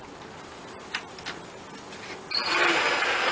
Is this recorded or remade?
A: recorded